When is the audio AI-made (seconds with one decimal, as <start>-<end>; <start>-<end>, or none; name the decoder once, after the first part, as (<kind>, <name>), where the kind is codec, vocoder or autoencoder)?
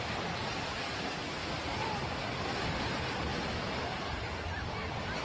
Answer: none